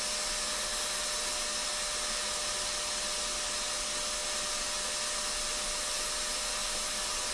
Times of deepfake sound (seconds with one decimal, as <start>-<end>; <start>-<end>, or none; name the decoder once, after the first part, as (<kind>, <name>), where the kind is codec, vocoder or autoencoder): none